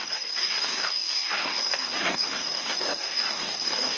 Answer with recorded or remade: remade